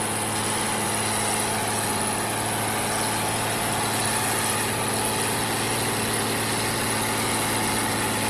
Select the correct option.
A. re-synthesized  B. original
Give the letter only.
B